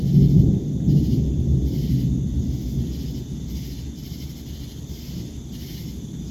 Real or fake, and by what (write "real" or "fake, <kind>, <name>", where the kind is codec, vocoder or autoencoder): real